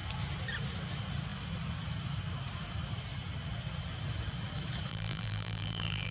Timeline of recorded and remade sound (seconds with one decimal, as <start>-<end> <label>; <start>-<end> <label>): 0.0-4.9 recorded; 4.9-6.1 remade